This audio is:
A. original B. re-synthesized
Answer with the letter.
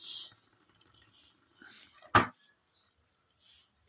A